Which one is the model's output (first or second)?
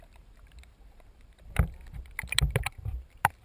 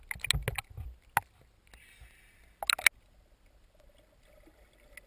first